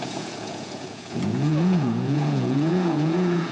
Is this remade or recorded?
remade